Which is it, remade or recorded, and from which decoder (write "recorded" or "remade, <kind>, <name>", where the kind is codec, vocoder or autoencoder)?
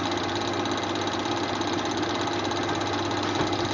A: recorded